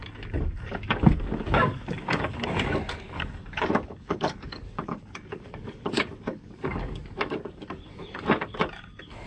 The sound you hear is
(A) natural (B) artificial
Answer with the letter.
B